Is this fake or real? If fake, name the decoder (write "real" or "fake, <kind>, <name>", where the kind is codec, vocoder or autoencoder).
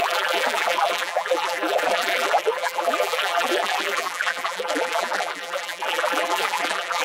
fake, vocoder, BigVGAN v2